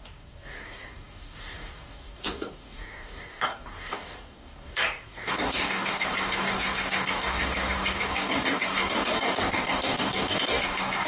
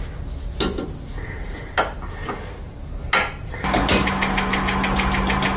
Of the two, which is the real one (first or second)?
second